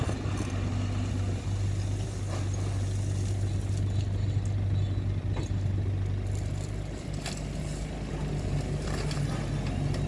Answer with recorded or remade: recorded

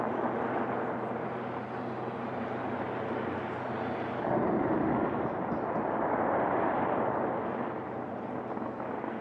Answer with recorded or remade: recorded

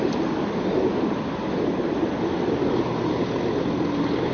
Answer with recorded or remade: remade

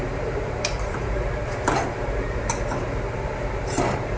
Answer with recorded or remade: remade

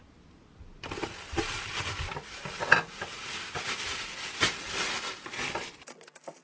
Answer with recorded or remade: recorded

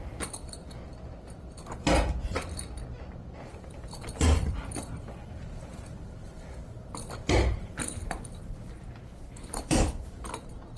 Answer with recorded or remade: remade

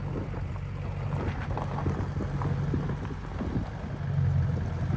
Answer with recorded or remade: recorded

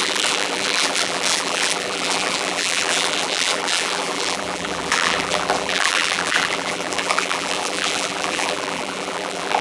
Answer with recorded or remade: remade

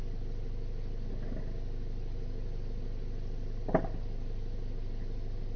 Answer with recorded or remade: recorded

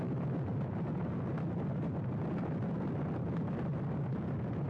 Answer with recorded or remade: recorded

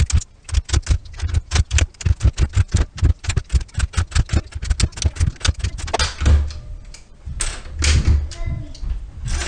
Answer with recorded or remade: recorded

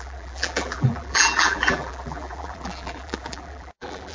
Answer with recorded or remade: remade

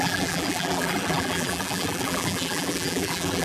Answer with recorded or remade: remade